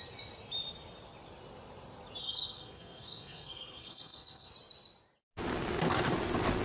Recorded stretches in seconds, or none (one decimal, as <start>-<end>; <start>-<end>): 0.0-2.2; 4.5-6.6